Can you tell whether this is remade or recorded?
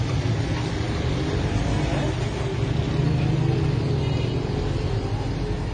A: recorded